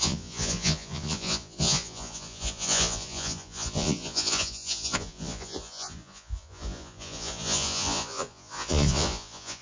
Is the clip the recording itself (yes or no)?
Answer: no